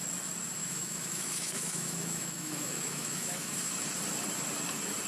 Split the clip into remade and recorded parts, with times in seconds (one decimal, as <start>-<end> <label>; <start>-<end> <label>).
0.0-0.6 recorded; 0.6-3.7 remade; 3.7-5.1 recorded